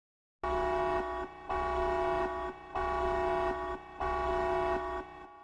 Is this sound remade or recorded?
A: recorded